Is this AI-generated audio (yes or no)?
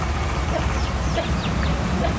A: no